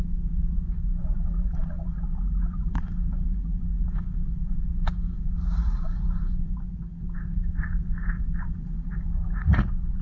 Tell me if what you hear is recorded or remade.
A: remade